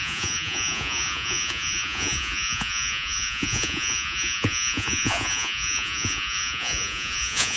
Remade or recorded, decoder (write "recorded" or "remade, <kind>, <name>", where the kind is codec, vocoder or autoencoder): remade, vocoder, Vocos